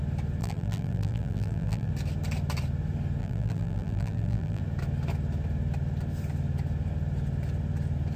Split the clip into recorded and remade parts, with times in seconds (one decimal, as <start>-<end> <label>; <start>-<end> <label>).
0.0-0.4 recorded; 0.4-1.9 remade; 1.9-3.2 recorded; 3.2-4.6 remade; 4.6-8.2 recorded